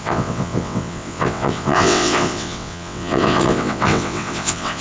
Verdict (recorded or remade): remade